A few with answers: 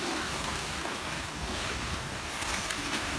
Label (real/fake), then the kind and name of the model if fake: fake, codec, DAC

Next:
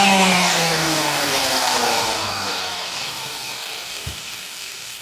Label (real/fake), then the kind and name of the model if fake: fake, codec, DAC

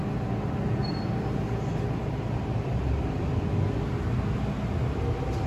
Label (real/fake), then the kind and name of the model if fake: real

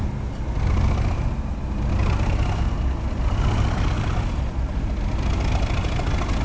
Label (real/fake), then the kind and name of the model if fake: real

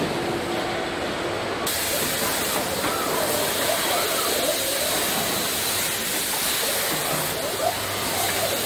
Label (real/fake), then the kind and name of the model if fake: real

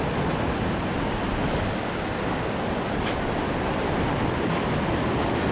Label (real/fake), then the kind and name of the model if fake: real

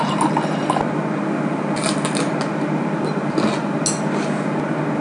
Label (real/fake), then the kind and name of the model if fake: real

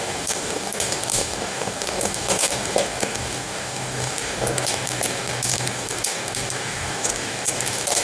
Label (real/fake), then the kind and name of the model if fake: fake, codec, DAC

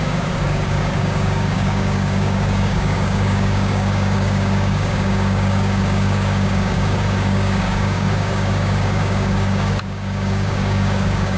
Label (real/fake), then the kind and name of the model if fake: fake, codec, DAC